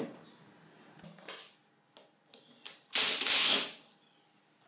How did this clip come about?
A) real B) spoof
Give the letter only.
A